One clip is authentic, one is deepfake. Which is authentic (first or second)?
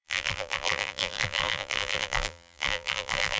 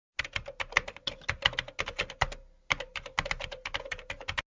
second